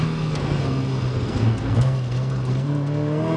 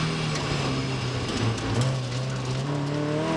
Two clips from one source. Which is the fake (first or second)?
first